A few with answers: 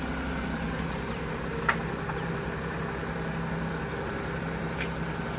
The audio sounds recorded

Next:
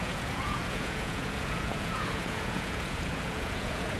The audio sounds remade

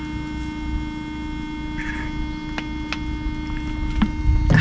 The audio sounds recorded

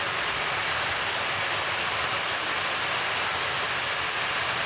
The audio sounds recorded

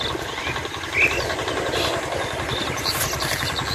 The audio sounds recorded